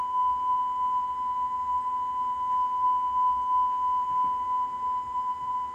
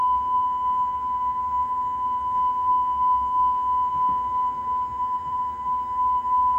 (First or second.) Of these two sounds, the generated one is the second